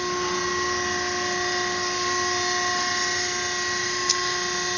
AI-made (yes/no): no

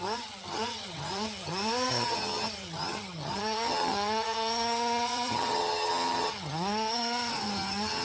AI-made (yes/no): yes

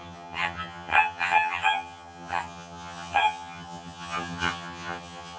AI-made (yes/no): yes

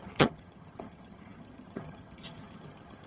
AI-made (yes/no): yes